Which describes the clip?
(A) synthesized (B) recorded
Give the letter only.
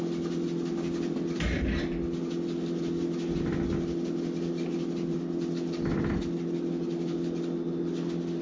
B